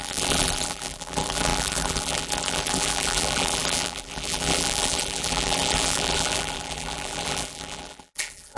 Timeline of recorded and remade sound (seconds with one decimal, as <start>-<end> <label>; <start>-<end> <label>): 0.0-8.6 remade